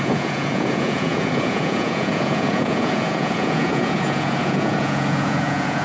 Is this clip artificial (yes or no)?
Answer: yes